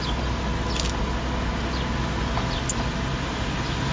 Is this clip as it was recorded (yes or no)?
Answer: yes